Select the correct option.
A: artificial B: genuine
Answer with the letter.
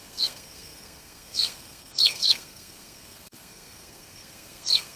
A